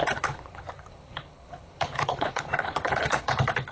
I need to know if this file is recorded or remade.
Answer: remade